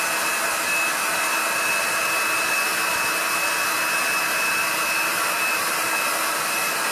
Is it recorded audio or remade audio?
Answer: recorded